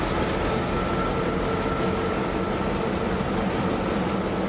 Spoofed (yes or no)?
no